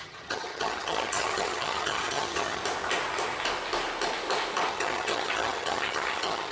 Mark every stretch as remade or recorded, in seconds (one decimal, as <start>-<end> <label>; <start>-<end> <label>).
0.0-2.6 remade; 2.6-4.7 recorded; 4.7-6.5 remade